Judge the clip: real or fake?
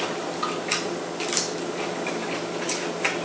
real